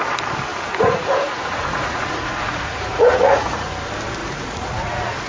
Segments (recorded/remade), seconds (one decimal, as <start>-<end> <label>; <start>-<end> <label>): 0.0-0.5 recorded; 0.5-3.7 remade; 3.7-4.2 recorded; 4.2-5.3 remade